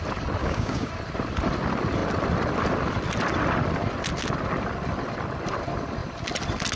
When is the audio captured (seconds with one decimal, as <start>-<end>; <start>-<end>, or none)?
0.0-0.4; 0.9-6.8